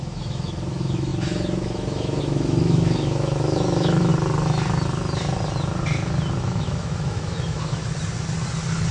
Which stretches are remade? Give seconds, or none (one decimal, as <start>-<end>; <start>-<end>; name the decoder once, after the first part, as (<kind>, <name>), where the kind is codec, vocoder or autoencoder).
0.0-4.1 (autoencoder, DAC-VAE); 6.4-7.8